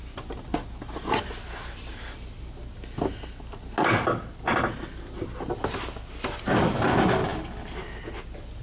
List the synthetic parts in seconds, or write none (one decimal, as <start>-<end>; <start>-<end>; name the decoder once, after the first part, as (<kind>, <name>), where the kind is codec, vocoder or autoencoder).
none